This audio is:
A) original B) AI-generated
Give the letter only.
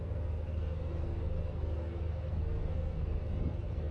B